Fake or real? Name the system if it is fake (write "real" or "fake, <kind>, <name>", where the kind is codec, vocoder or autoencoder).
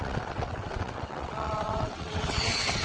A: fake, vocoder, WaveNeXt